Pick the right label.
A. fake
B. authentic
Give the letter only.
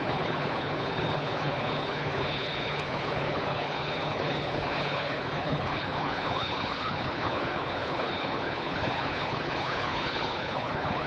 A